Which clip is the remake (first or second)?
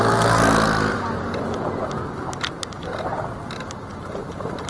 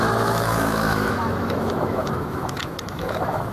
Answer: second